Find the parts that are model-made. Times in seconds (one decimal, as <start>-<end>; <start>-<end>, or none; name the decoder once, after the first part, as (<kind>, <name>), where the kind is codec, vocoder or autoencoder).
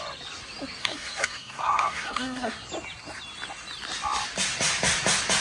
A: 0.8-2.7 (codec, SNAC)